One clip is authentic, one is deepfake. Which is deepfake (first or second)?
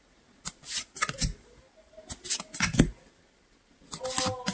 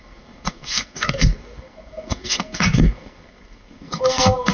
second